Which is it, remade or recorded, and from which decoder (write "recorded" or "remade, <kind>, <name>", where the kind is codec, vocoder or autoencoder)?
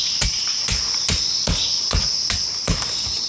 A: recorded